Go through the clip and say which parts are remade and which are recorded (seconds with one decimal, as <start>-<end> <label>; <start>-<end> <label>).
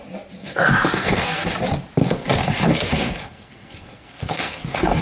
0.0-0.4 recorded; 0.4-1.5 remade; 1.5-2.0 recorded; 2.0-5.0 remade